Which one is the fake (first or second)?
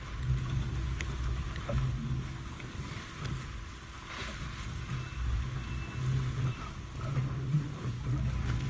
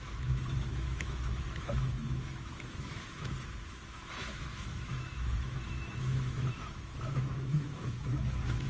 second